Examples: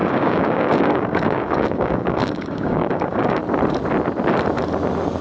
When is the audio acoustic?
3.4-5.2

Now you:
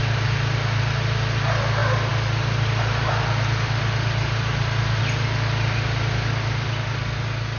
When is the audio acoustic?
0.0-7.6

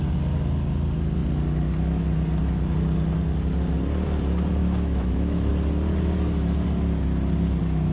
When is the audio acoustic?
0.0-4.6; 5.5-7.9